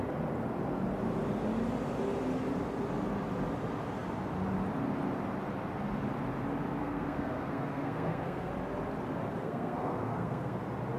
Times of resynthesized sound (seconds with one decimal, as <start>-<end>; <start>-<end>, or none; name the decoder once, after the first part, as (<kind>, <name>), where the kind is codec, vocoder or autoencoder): 6.8-8.5 (codec, SNAC); 9.4-10.6